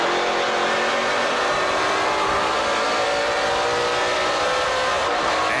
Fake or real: real